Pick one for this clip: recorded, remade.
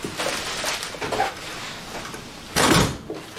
recorded